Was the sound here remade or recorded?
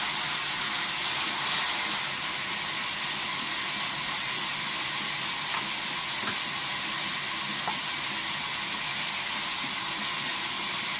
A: recorded